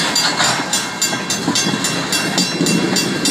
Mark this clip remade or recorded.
recorded